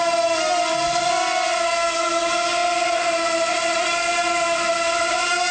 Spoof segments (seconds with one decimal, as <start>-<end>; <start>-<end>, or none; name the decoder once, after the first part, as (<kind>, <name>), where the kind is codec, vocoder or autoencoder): none